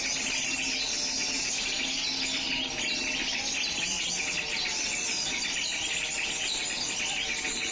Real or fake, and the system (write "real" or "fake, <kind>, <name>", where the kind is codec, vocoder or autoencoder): real